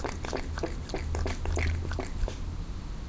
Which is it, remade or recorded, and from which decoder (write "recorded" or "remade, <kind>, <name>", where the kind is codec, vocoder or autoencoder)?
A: recorded